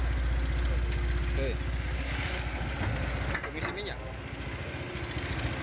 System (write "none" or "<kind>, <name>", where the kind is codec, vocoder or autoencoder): none